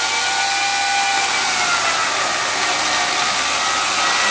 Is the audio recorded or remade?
recorded